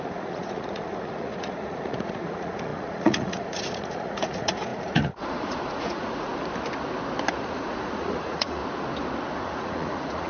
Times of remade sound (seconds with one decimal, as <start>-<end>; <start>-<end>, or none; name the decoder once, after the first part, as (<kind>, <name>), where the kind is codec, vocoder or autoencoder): 0.0-6.3 (vocoder, Vocos); 7.4-8.6; 9.4-10.3